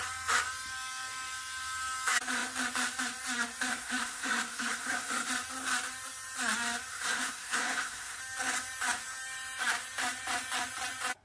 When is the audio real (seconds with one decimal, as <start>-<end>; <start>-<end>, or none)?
0.0-3.7; 5.3-6.9; 8.2-11.2